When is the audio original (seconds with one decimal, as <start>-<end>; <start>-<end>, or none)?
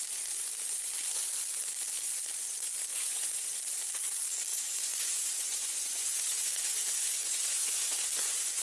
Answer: 0.0-2.9; 3.6-4.5